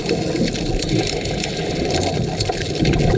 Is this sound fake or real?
real